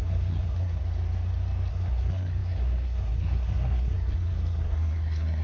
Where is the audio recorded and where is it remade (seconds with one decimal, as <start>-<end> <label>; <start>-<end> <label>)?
0.0-0.8 remade; 0.8-1.7 recorded; 1.7-5.4 remade